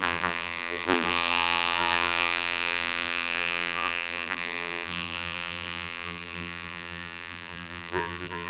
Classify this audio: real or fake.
fake